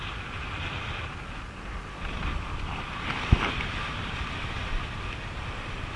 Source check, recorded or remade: recorded